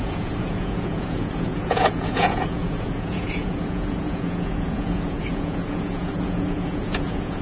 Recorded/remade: remade